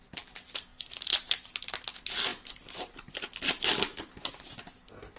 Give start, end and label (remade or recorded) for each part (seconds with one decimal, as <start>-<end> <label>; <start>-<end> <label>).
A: 0.0-5.2 recorded